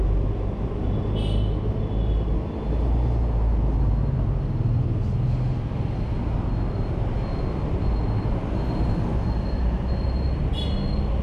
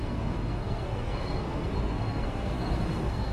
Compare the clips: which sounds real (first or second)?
first